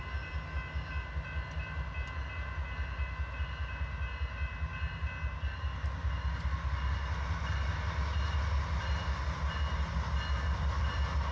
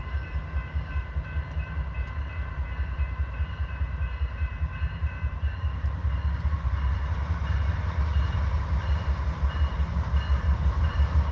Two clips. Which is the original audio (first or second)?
first